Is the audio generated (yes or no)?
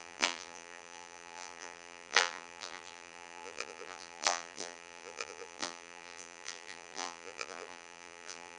yes